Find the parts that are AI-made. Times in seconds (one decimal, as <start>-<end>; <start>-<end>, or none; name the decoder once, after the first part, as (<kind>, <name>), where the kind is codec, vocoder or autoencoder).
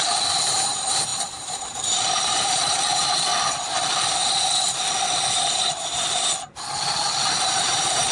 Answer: 0.0-3.3 (vocoder, BigVGAN v2); 7.5-8.1